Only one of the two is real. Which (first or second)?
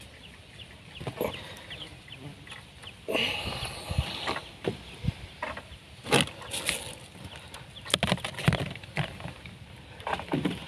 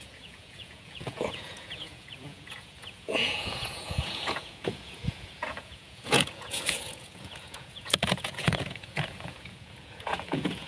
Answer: first